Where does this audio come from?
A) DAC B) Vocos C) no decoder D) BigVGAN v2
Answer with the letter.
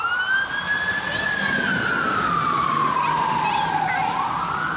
C